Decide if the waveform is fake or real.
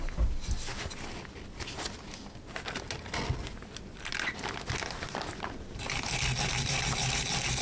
real